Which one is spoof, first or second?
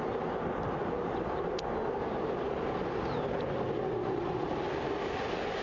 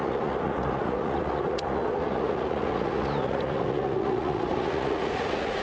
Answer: second